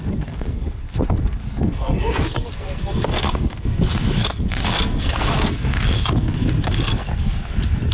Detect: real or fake fake